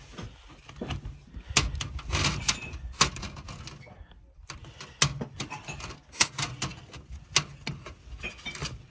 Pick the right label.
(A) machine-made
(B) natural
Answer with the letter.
B